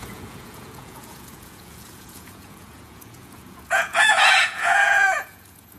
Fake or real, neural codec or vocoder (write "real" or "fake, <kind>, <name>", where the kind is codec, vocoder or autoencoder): fake, vocoder, Vocos